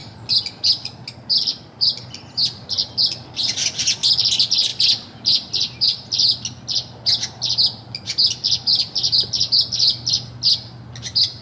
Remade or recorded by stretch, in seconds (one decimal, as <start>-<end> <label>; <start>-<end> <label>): 0.0-11.4 recorded